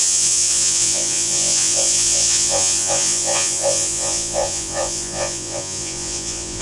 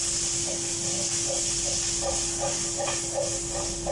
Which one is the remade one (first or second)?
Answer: first